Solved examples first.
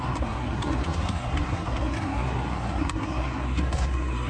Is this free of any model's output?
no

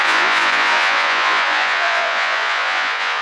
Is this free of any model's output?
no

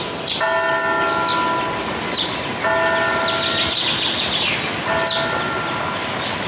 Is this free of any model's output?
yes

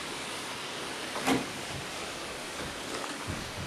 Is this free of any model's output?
no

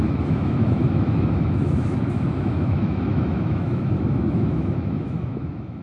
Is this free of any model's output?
no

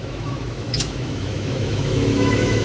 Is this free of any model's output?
no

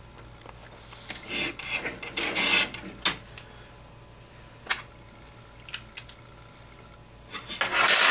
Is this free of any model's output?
yes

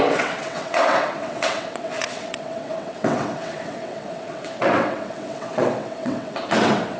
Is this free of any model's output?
no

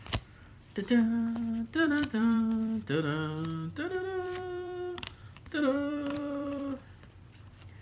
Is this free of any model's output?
no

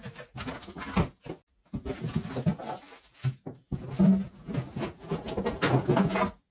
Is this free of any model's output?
yes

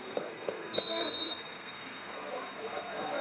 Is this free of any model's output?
no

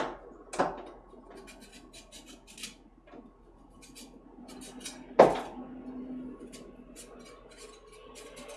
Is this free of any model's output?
yes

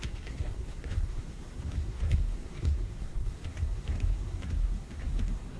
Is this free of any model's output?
no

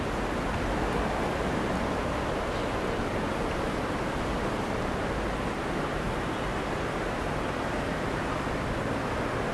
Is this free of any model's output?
yes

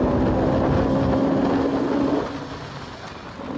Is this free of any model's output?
yes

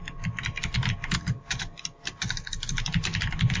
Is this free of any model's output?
yes